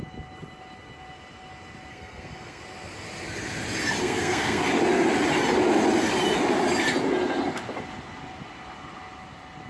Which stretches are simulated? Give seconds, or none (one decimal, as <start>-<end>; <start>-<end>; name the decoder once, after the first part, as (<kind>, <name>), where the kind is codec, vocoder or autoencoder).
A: 1.9-2.6 (codec, SNAC); 4.0-4.6